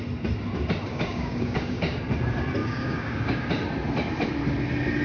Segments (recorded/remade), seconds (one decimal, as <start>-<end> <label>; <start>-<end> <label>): 0.0-0.9 recorded; 0.9-2.0 remade; 2.0-2.6 recorded; 2.6-3.5 remade; 3.5-5.0 recorded